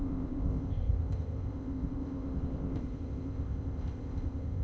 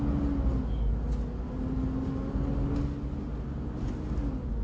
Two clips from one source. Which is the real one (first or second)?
second